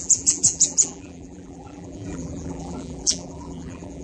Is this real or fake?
fake